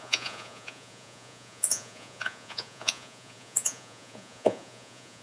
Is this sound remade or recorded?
remade